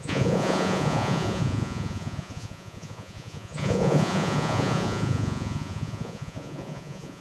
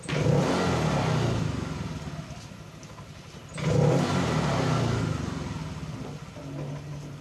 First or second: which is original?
second